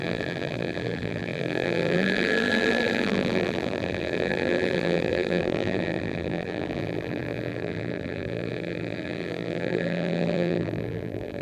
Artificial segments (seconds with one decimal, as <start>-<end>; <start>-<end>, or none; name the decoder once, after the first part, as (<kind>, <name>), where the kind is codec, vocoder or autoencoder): 0.0-11.4 (vocoder, BigVGAN v2)